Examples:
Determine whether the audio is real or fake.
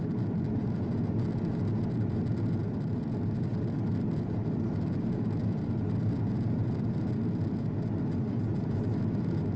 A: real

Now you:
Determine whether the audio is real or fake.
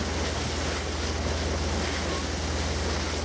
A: real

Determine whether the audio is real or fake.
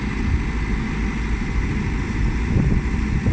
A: real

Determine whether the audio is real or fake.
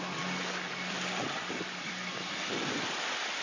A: real